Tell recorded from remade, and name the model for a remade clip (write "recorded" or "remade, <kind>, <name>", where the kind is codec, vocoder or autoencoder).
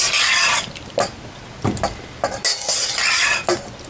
recorded